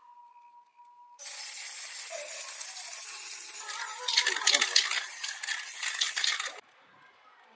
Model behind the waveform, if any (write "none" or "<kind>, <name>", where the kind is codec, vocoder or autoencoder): none